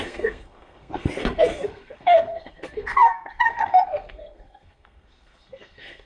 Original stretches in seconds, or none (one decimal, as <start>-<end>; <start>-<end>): none

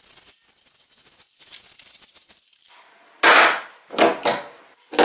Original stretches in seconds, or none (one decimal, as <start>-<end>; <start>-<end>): 0.0-5.0

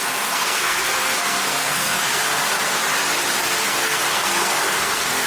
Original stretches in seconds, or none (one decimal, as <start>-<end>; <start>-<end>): 2.8-3.4

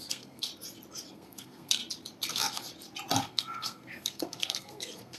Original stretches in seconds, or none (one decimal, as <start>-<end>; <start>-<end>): 0.5-1.1; 1.8-2.3; 2.7-3.2

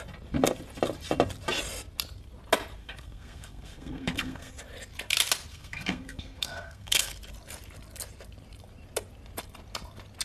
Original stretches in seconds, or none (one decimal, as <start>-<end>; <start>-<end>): 0.0-2.8; 4.5-5.5; 7.1-10.2